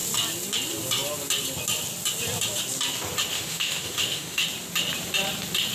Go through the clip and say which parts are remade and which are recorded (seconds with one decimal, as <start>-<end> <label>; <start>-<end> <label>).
0.0-3.3 recorded; 3.3-4.4 remade; 4.4-5.7 recorded